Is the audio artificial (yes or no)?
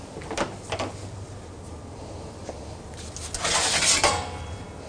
no